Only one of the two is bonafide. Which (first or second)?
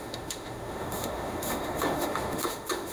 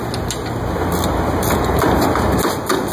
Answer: second